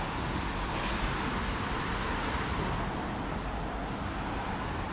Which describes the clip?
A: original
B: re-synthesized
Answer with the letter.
A